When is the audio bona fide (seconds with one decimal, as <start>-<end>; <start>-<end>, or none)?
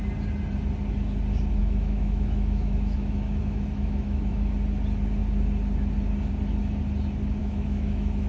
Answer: 0.0-1.6; 4.5-7.4